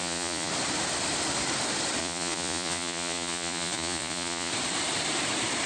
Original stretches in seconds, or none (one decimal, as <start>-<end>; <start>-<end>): 0.5-2.0; 4.5-5.7